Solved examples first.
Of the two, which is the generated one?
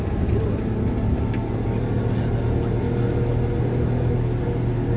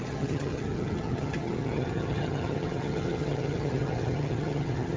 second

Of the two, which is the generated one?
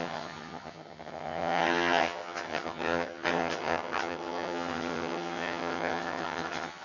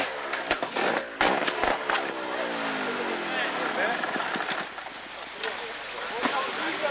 first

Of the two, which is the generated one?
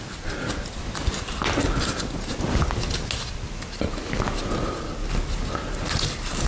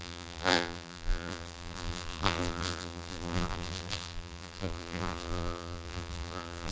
second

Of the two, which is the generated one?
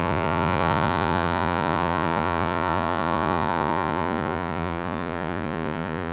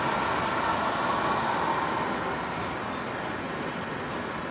first